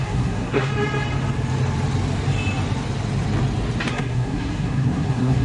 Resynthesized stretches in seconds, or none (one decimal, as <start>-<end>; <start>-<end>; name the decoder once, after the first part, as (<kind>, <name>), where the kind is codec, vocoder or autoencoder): 0.0-0.7 (codec, SNAC); 3.9-5.4